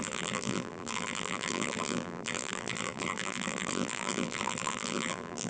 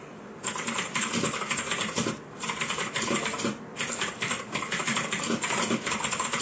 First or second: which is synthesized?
first